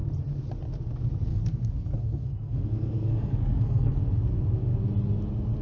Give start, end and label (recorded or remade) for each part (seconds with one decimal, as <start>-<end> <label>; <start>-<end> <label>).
0.0-1.3 recorded; 1.3-4.0 remade; 4.0-5.6 recorded

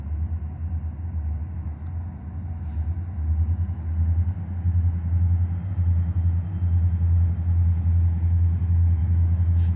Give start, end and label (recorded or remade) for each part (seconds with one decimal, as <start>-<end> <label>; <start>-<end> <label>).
0.0-9.0 recorded; 9.0-9.8 remade

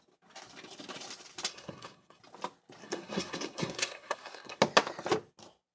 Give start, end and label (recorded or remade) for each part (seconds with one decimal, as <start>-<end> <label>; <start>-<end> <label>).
0.0-1.5 recorded; 1.5-2.2 remade; 2.2-2.8 recorded; 2.8-4.6 remade; 4.6-5.7 recorded

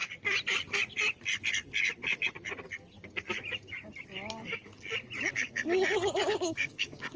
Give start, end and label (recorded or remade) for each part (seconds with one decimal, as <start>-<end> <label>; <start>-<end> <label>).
0.0-4.3 recorded; 4.3-4.7 remade; 4.7-5.3 recorded; 5.3-7.2 remade

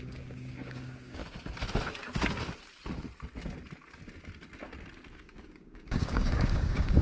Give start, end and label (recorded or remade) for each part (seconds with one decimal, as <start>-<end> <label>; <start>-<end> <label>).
0.0-1.2 remade; 1.2-5.1 recorded; 5.1-7.0 remade

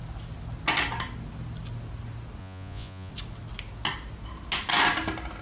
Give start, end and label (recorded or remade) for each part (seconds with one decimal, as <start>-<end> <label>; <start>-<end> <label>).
0.0-2.4 recorded; 2.4-3.1 remade; 3.1-5.4 recorded

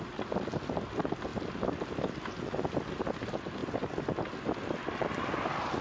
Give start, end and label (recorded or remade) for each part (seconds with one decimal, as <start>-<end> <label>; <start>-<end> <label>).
0.0-5.8 recorded

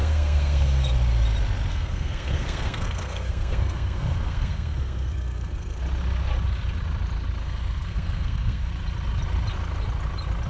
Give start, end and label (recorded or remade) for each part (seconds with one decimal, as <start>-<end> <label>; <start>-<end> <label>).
0.0-0.9 remade; 0.9-1.7 recorded; 1.7-5.8 remade; 5.8-7.4 recorded; 7.4-8.7 remade; 8.7-10.5 recorded